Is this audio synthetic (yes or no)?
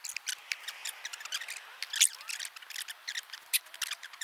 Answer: no